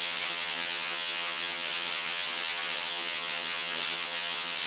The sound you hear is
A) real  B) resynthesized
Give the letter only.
B